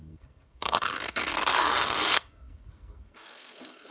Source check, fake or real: fake